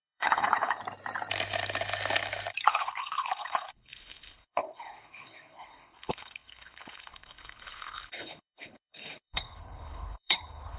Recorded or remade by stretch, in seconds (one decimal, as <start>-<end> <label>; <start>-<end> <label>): 0.0-0.8 remade; 0.8-2.7 recorded; 2.7-10.8 remade